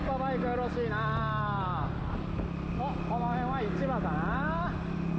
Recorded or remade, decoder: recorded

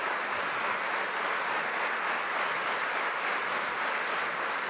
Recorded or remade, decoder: recorded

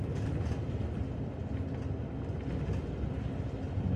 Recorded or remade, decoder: recorded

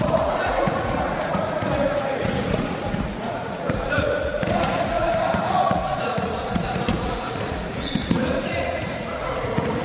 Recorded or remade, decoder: remade, vocoder, Vocos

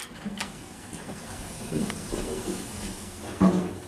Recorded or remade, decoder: remade, codec, SNAC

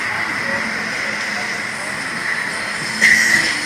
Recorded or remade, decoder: recorded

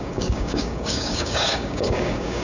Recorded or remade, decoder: remade, codec, DAC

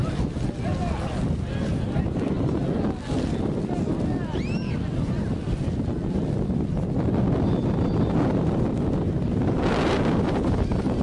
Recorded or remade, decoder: recorded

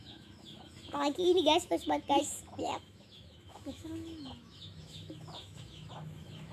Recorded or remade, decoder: remade, autoencoder, DAC-VAE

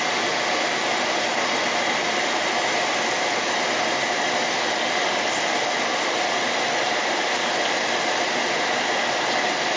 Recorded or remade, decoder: recorded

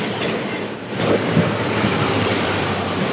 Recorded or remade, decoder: remade, vocoder, BigVGAN v2